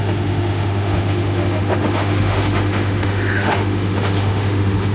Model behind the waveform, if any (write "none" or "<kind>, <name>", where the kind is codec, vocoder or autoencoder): autoencoder, DAC-VAE